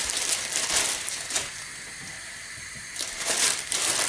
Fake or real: fake